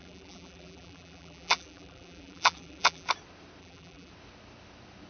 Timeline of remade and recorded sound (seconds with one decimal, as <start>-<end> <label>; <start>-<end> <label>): 0.0-3.1 remade; 3.1-3.6 recorded; 3.6-4.1 remade; 4.1-5.1 recorded